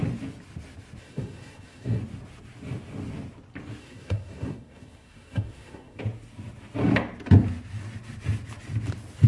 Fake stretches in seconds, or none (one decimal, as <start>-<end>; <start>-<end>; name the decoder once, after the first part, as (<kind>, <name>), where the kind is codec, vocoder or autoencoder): 1.0-2.0 (codec, SNAC); 3.8-6.0